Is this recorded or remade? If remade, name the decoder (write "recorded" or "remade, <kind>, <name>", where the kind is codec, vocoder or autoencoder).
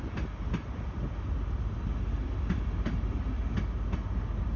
recorded